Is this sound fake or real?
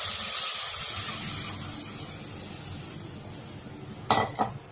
real